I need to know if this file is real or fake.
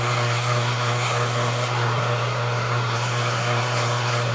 fake